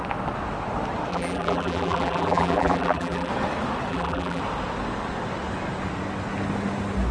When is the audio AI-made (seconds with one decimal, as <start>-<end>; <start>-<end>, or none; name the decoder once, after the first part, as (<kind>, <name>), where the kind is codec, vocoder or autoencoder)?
1.1-3.3 (vocoder, BigVGAN v2); 3.9-4.4

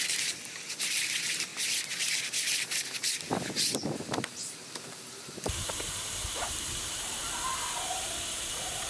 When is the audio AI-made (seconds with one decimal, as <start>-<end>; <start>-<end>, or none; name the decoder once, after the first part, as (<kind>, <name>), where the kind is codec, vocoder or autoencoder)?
0.0-1.5 (vocoder, BigVGAN v2); 4.3-7.2; 7.9-8.9

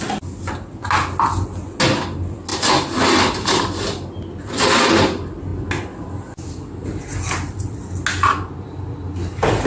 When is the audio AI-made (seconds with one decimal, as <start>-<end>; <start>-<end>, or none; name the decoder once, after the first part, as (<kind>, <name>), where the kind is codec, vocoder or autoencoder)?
none

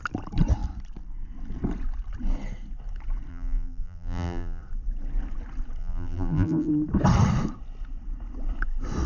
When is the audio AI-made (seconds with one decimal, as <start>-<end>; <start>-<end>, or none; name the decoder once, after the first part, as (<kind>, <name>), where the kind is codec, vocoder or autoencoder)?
3.3-4.6 (vocoder, BigVGAN v2); 5.8-6.7

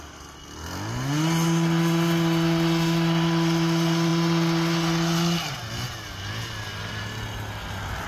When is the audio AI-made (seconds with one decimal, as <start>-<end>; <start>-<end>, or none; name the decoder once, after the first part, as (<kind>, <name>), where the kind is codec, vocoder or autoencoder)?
none

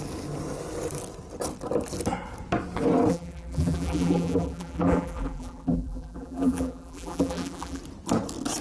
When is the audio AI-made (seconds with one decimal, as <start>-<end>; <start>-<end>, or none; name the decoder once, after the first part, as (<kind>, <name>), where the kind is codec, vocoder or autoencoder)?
3.1-7.8 (vocoder, BigVGAN v2)

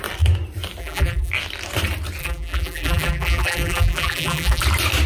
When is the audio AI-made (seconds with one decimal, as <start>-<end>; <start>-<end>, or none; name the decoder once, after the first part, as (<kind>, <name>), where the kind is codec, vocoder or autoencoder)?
0.8-1.3 (vocoder, BigVGAN v2); 2.2-4.6

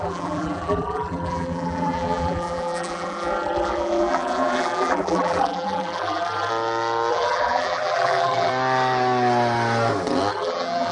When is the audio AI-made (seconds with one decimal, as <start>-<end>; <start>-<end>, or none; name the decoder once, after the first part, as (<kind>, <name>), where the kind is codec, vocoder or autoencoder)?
0.0-6.5 (vocoder, BigVGAN v2); 7.1-8.5; 10.3-10.9